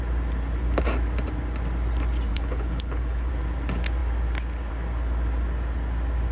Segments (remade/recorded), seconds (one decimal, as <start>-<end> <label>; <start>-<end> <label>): 0.0-2.3 recorded; 2.3-3.3 remade; 3.3-6.3 recorded